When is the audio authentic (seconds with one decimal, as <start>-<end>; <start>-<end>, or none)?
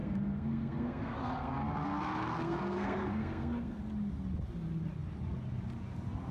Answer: 3.8-6.3